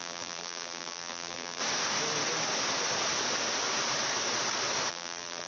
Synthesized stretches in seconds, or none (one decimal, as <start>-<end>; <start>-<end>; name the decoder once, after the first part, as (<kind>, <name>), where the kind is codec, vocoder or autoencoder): 0.0-1.6 (vocoder, BigVGAN v2); 4.9-5.5